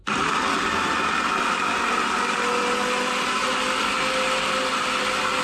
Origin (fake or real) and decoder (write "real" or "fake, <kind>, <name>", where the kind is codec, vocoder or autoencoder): real